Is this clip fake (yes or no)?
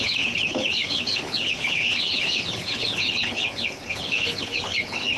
yes